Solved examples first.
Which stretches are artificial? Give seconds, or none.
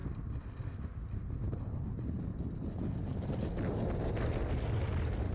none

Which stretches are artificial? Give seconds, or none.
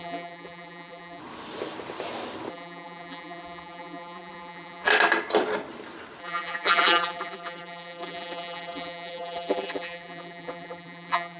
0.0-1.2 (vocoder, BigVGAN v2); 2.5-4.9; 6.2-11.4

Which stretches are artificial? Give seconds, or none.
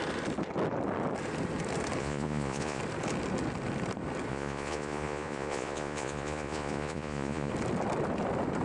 2.0-2.8 (vocoder, Vocos); 4.3-7.5